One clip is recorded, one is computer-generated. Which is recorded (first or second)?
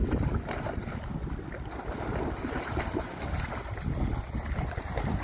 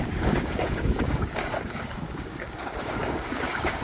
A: first